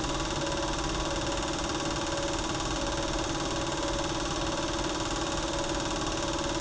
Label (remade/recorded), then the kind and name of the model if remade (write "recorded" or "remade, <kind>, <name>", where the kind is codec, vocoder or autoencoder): recorded